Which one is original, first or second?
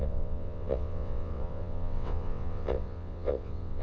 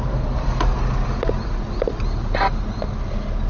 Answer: second